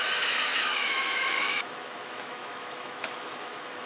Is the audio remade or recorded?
remade